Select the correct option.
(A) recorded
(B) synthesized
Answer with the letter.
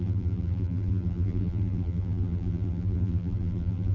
B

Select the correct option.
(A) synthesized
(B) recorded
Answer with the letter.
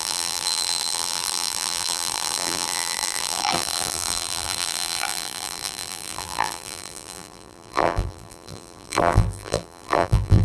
A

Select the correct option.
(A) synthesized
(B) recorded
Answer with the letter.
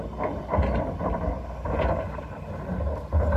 B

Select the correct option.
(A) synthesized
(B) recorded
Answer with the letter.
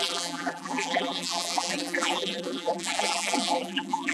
A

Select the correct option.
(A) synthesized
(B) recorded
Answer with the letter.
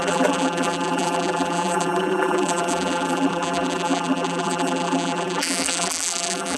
A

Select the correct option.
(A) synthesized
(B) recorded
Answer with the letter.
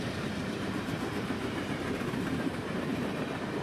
A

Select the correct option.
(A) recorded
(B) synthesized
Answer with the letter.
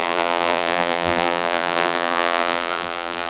B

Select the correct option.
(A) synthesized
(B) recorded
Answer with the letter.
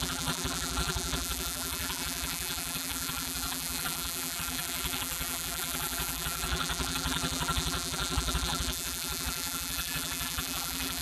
A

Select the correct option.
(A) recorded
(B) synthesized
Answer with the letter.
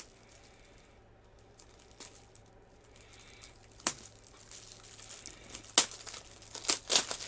A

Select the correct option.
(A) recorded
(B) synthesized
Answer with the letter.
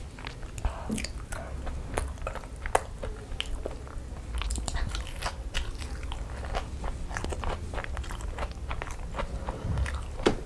A